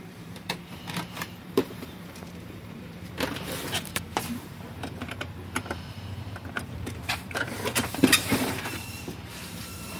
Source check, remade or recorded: remade